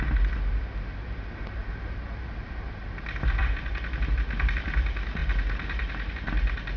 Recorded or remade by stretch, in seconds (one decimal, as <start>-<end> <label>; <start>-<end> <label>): 0.0-6.8 recorded